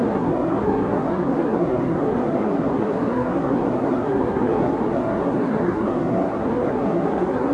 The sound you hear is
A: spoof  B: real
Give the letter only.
A